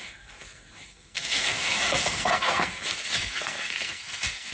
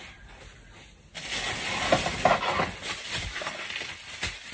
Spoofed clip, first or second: first